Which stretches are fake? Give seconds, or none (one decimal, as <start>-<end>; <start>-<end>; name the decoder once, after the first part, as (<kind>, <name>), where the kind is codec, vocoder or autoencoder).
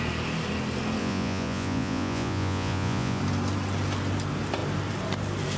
1.0-3.2 (vocoder, Vocos)